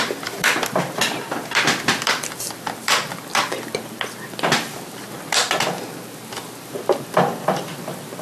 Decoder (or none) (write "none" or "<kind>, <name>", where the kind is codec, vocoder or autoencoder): vocoder, BigVGAN v2